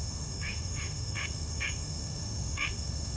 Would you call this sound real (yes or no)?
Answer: no